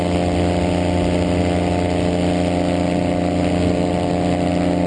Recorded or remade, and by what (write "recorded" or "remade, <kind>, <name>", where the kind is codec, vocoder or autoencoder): recorded